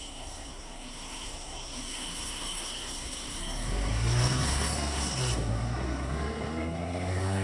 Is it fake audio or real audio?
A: fake